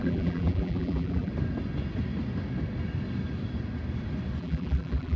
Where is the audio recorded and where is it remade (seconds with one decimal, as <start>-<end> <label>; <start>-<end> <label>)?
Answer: 0.0-1.3 remade; 1.3-4.4 recorded; 4.4-5.2 remade